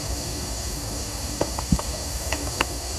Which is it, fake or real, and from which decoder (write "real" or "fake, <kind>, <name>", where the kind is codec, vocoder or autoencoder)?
fake, codec, DAC